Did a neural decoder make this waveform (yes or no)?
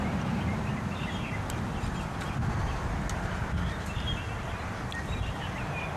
no